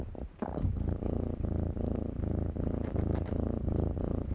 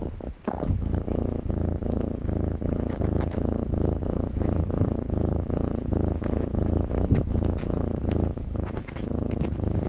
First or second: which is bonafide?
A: first